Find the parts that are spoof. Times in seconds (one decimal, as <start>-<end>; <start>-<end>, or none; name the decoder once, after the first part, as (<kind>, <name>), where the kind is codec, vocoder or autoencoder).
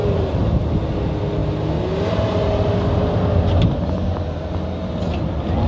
0.0-0.7 (vocoder, BigVGAN v2)